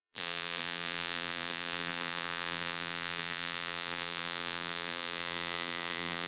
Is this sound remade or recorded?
remade